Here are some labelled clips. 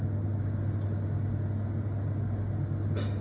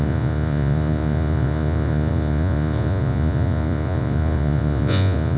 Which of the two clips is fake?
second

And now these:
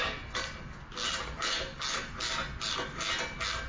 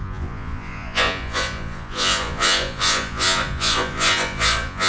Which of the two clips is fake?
second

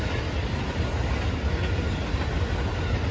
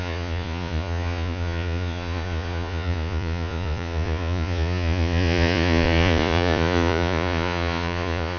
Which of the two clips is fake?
second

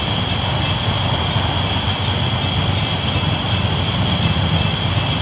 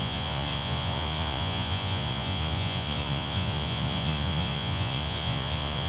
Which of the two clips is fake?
second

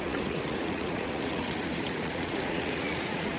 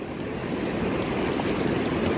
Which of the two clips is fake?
first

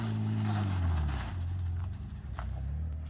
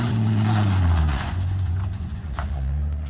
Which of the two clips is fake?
second